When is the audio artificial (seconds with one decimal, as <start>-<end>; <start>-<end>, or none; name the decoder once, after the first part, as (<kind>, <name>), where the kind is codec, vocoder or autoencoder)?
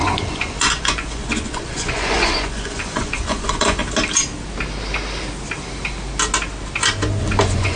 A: 0.0-3.8 (vocoder, Vocos); 7.2-7.8